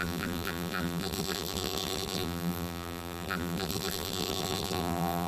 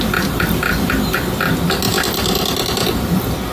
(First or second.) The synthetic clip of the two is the first